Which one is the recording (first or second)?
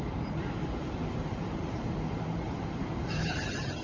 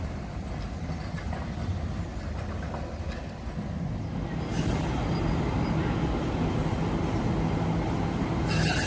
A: second